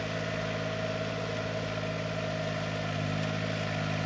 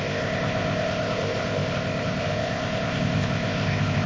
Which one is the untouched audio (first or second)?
first